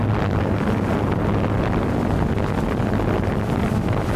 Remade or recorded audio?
recorded